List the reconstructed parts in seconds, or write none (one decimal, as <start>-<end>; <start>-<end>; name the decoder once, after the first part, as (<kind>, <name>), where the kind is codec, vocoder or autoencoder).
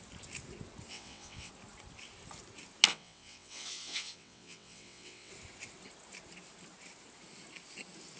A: 0.9-1.5 (vocoder, WaveNeXt); 2.9-5.3